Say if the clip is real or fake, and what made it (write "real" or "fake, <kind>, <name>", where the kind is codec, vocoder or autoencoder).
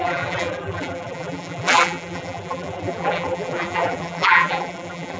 fake, vocoder, BigVGAN v2